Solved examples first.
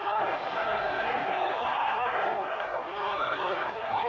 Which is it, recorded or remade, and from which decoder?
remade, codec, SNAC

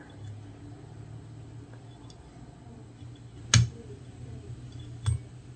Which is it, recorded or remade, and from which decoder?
recorded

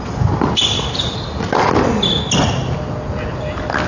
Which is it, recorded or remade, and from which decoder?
recorded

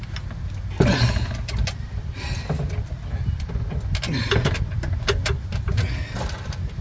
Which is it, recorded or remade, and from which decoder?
recorded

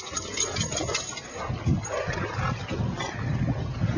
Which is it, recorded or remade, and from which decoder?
recorded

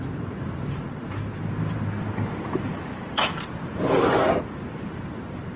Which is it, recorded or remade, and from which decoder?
remade, vocoder, BigVGAN v2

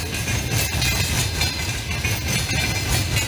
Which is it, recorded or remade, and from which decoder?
recorded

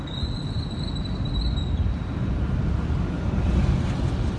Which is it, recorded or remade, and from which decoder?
recorded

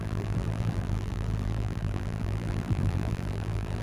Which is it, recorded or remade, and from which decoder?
remade, vocoder, BigVGAN v2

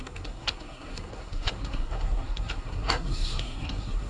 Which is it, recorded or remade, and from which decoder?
remade, codec, SNAC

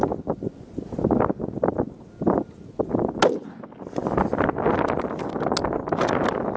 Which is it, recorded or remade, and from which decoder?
recorded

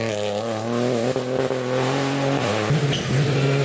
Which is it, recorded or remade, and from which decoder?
recorded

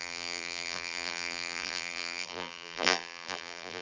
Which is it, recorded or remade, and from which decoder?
remade, vocoder, BigVGAN v2